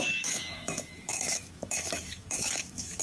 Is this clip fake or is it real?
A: fake